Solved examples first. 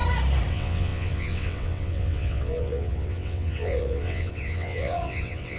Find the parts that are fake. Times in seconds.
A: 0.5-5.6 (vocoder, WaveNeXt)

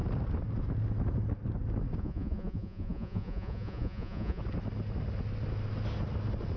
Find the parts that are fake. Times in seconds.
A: 2.0-4.4 (vocoder, Vocos)

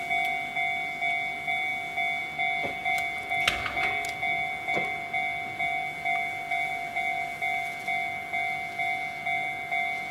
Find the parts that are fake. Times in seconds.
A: none

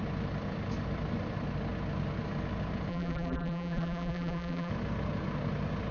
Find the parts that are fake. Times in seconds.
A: 2.9-4.7 (vocoder, BigVGAN v2)